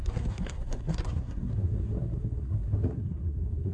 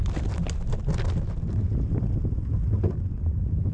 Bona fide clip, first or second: second